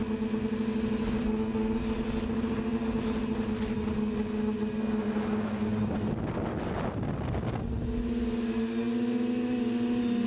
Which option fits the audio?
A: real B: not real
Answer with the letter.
A